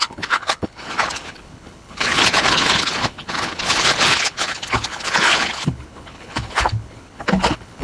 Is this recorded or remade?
remade